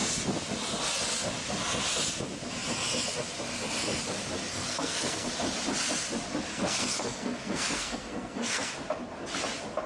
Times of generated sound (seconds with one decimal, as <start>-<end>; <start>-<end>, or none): 4.5-5.3; 6.5-8.7